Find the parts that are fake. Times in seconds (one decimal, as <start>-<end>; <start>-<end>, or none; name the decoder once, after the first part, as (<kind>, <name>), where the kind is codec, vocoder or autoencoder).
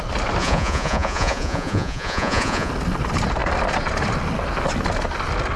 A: 0.4-2.7 (vocoder, Vocos)